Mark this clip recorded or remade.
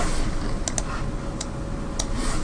recorded